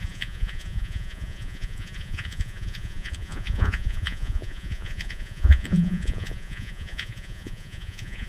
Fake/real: fake